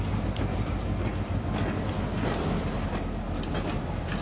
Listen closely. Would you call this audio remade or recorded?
recorded